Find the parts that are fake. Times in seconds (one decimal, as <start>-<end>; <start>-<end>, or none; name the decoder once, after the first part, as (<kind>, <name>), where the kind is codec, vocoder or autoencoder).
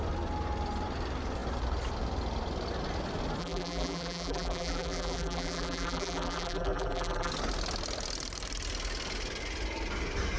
3.4-7.3 (vocoder, BigVGAN v2)